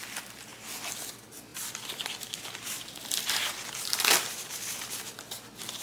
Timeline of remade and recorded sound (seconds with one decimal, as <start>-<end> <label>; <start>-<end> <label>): 0.0-1.5 recorded; 1.5-4.8 remade; 4.8-5.8 recorded